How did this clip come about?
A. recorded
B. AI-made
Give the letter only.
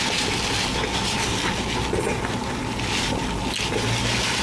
A